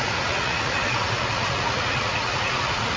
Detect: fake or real fake